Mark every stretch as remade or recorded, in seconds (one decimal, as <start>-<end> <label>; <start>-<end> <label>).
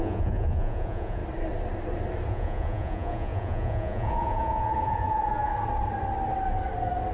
0.0-1.2 remade; 1.2-2.3 recorded; 2.3-5.5 remade; 5.5-7.1 recorded